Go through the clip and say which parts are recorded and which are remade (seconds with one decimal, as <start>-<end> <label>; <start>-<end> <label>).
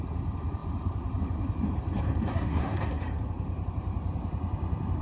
0.0-2.3 recorded; 2.3-3.0 remade; 3.0-5.0 recorded